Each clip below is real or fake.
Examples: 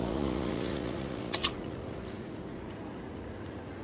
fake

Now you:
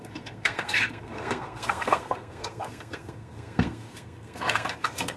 fake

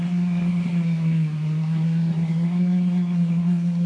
fake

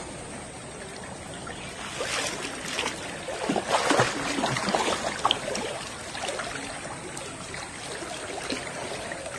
real